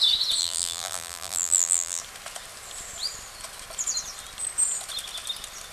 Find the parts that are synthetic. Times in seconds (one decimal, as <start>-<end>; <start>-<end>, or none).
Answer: 0.4-2.0